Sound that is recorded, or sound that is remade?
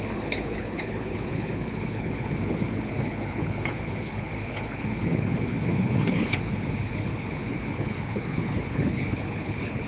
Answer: remade